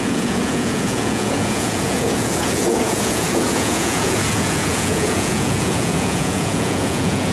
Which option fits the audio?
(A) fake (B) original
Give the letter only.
A